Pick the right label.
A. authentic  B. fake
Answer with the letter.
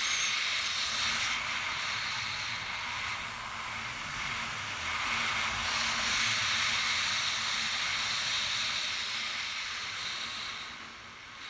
A